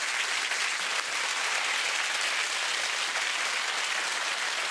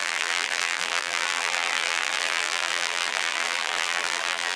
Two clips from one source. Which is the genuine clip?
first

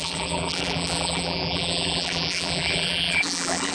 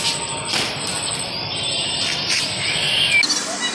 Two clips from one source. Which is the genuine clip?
second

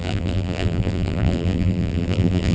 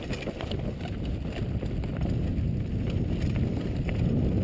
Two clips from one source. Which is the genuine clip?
second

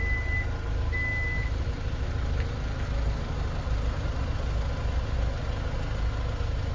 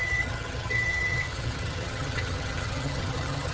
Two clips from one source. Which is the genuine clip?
first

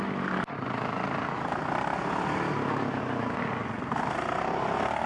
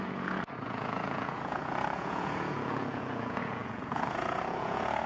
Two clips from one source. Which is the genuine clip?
first